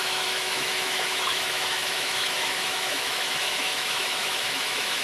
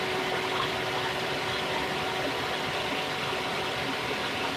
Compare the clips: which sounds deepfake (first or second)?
first